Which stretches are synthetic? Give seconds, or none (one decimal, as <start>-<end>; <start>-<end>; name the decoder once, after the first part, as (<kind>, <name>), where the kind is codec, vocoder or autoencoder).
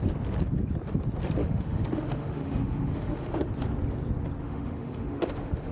1.4-3.5 (autoencoder, DAC-VAE); 4.4-5.7